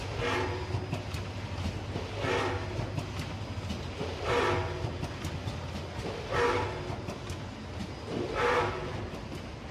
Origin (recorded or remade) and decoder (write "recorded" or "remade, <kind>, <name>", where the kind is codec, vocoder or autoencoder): recorded